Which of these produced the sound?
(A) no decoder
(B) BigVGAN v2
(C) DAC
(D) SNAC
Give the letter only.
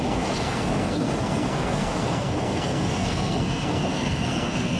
D